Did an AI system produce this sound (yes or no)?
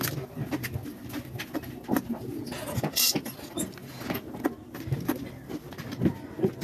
no